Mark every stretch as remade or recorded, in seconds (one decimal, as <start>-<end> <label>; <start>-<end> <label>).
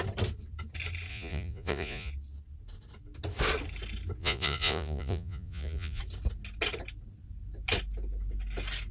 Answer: 0.0-1.1 recorded; 1.1-2.1 remade; 2.1-4.2 recorded; 4.2-6.0 remade; 6.0-8.9 recorded